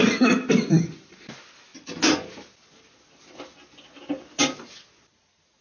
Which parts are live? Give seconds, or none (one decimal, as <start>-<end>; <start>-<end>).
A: 0.0-5.6